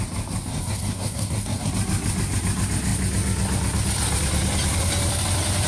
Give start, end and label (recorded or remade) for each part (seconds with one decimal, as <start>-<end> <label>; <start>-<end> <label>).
0.0-0.5 recorded; 0.5-1.7 remade; 1.7-5.7 recorded